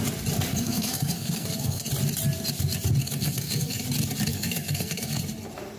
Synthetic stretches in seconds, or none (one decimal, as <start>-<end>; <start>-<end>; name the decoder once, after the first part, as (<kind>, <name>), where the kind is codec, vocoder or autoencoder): 0.5-1.9 (codec, SNAC); 3.0-3.8; 4.3-5.2